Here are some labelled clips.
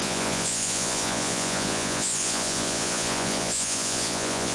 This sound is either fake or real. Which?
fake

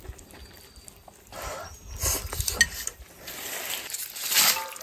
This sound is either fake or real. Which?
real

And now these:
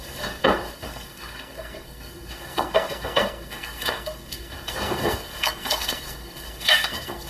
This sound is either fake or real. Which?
fake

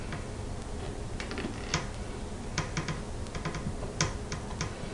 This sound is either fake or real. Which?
real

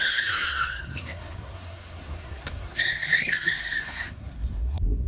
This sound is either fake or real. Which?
fake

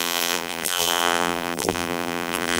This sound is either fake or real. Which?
fake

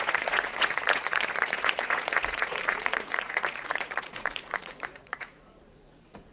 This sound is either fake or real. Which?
fake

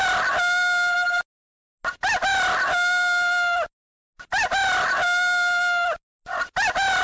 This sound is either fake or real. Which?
real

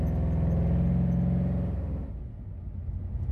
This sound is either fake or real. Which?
real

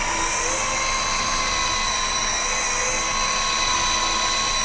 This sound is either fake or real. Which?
real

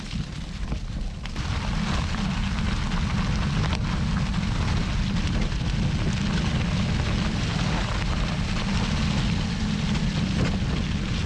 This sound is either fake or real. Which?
real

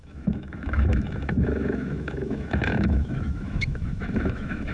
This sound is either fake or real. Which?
fake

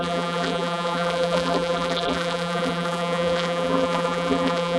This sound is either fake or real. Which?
fake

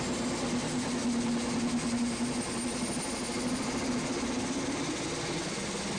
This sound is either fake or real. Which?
real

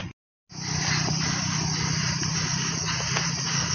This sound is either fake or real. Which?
real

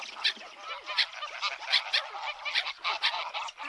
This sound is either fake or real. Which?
real